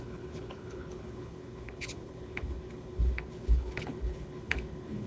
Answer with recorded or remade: remade